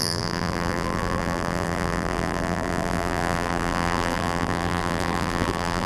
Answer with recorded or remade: remade